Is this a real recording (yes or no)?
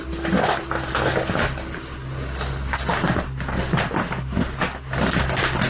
yes